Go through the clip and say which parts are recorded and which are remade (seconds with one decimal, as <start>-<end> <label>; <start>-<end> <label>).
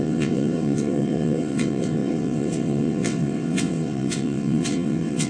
0.0-5.3 remade